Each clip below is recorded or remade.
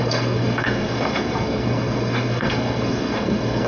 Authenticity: remade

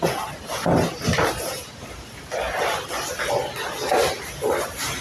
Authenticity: recorded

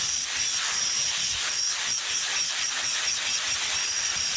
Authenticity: recorded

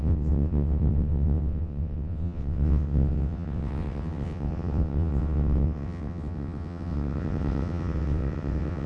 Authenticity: remade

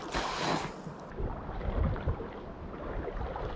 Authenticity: recorded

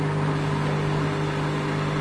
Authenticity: recorded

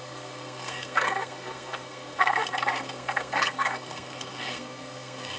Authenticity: remade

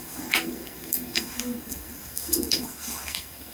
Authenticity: remade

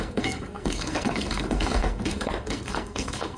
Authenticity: remade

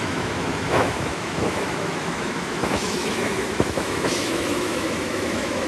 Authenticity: remade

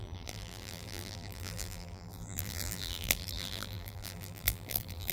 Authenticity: remade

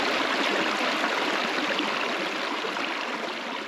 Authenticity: recorded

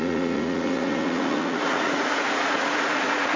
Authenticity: remade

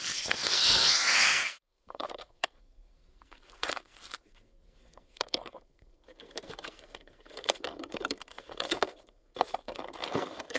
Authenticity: remade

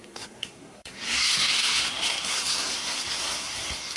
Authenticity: remade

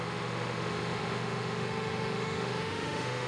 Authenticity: remade